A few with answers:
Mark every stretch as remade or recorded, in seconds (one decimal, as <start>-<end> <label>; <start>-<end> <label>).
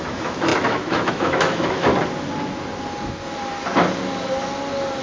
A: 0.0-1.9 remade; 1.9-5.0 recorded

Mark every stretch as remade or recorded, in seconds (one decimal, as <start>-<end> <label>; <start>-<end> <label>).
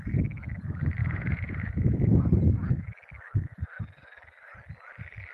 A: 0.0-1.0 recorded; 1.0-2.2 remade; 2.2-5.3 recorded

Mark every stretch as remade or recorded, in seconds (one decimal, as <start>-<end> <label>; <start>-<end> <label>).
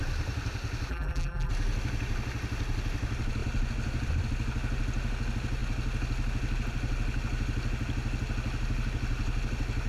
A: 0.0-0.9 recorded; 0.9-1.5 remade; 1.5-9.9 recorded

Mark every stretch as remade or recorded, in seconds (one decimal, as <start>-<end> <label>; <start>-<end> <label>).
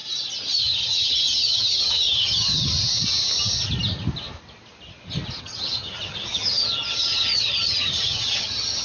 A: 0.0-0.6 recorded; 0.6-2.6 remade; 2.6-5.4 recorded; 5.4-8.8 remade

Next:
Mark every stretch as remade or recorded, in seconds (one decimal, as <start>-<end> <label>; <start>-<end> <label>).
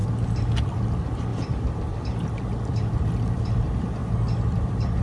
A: 0.0-0.6 recorded; 0.6-1.3 remade; 1.3-2.7 recorded; 2.7-4.0 remade; 4.0-4.6 recorded; 4.6-5.0 remade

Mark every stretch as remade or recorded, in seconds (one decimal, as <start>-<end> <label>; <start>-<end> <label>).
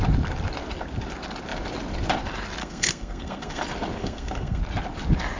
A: 0.0-2.6 recorded; 2.6-3.6 remade; 3.6-4.0 recorded; 4.0-4.6 remade; 4.6-5.4 recorded